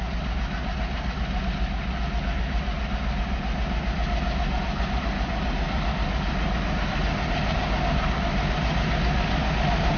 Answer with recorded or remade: recorded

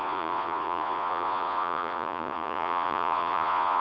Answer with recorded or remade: remade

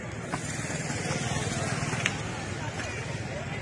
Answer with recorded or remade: remade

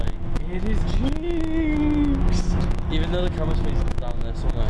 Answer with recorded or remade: recorded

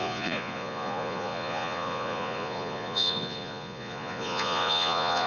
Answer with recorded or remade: remade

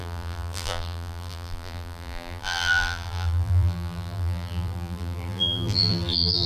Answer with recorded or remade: remade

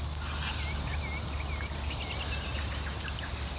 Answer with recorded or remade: recorded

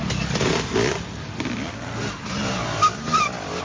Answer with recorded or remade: recorded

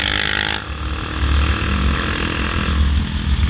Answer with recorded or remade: recorded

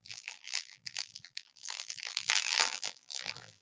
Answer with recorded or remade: remade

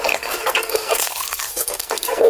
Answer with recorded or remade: remade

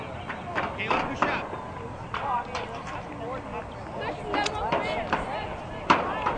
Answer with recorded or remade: recorded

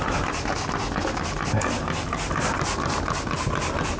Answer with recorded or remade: recorded